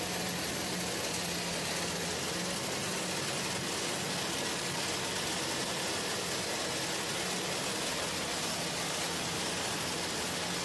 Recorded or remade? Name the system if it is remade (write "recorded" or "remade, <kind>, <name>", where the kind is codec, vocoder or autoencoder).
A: recorded